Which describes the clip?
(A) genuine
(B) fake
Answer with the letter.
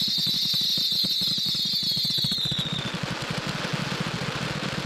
A